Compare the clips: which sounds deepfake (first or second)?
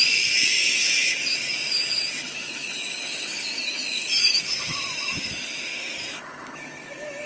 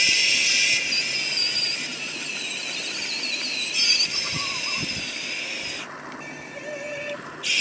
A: first